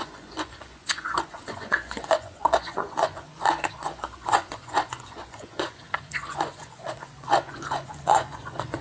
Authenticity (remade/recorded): remade